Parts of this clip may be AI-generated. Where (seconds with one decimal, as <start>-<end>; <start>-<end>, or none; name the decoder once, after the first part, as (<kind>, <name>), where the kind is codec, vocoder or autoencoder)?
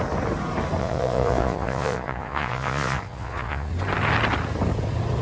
0.8-3.7 (vocoder, Vocos)